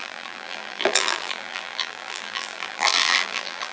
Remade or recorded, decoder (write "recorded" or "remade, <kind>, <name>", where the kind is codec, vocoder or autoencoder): remade, vocoder, BigVGAN v2